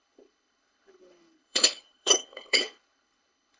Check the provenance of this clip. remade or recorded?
remade